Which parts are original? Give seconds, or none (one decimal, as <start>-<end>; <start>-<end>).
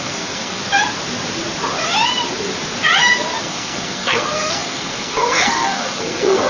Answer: 0.6-3.4